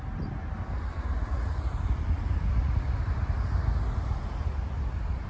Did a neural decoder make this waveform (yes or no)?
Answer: no